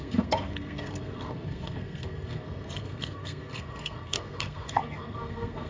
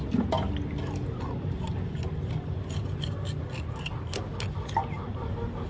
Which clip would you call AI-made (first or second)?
first